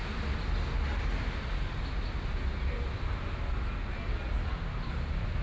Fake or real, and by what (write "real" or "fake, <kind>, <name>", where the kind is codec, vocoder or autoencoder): real